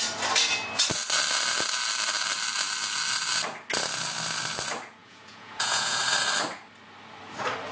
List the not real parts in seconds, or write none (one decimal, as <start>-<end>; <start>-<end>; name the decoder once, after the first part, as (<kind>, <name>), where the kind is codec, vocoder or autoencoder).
5.0-6.0 (vocoder, Vocos)